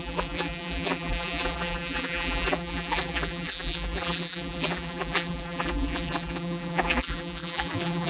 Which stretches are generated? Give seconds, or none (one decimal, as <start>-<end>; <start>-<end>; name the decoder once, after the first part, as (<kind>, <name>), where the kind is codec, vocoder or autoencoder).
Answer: 0.0-8.1 (vocoder, BigVGAN v2)